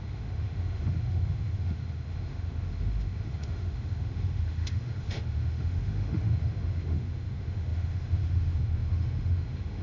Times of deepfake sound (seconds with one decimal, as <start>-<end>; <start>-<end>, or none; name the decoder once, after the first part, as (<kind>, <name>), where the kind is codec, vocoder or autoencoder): 0.0-9.8 (autoencoder, DAC-VAE)